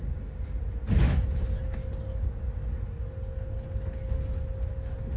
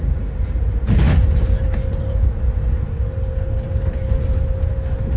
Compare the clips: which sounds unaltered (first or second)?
first